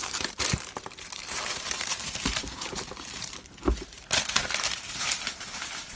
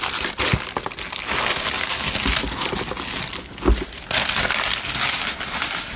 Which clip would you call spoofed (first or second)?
first